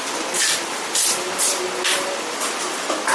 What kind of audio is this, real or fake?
real